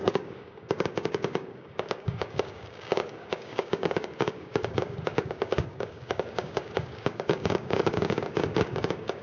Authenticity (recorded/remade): remade